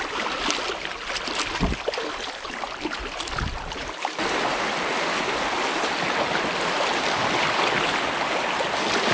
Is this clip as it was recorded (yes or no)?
yes